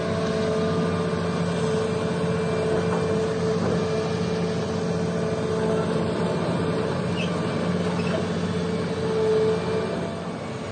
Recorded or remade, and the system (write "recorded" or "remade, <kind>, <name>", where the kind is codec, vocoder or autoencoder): recorded